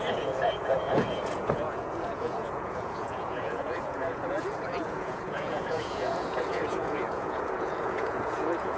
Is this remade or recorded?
remade